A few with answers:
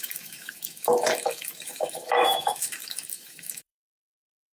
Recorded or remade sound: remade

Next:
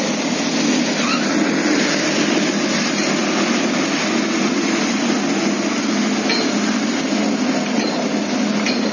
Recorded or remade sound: recorded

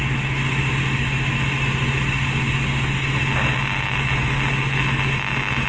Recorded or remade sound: recorded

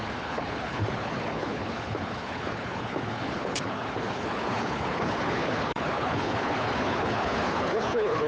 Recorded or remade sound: remade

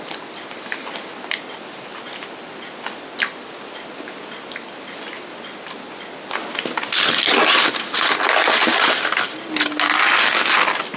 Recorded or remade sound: recorded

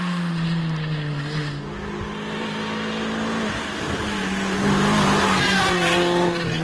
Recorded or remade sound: recorded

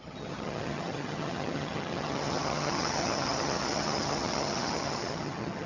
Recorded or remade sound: remade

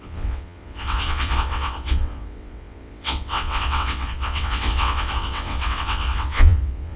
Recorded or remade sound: remade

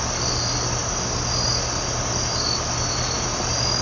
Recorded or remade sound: recorded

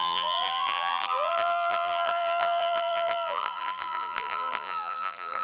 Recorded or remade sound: remade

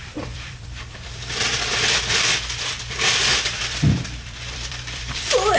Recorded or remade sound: remade